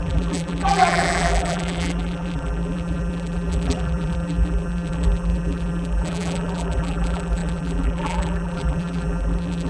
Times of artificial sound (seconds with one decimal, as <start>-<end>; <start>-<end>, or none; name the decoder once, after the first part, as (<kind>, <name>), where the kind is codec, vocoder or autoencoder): 0.0-9.7 (vocoder, BigVGAN v2)